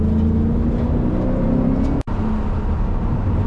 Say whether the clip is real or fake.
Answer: real